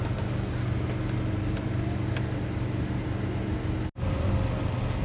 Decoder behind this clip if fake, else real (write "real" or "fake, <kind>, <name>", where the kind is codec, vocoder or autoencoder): real